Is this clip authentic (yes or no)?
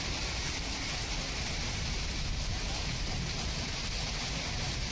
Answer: no